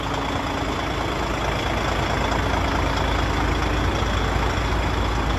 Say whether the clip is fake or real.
real